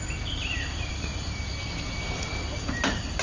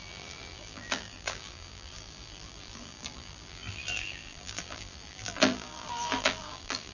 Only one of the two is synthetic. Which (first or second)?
second